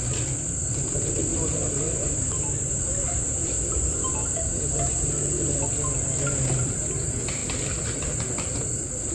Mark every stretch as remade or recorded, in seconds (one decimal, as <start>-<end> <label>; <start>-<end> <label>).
0.0-1.3 recorded; 1.3-5.6 remade; 5.6-9.1 recorded